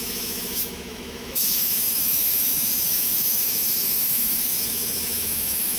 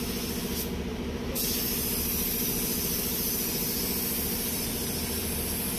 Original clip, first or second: second